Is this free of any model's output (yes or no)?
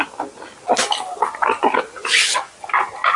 yes